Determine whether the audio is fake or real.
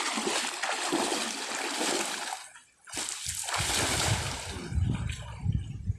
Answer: real